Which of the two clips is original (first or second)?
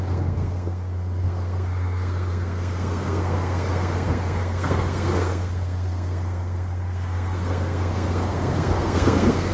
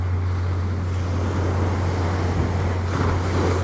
second